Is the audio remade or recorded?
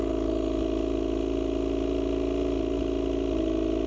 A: recorded